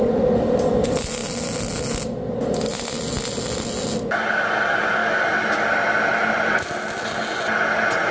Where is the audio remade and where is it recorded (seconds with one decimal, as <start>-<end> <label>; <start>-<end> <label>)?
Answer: 0.0-8.1 recorded